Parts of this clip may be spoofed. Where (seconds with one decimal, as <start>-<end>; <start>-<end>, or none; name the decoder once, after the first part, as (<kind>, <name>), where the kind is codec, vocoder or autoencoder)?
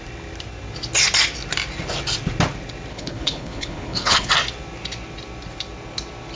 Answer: 2.9-4.3 (codec, HILCodec)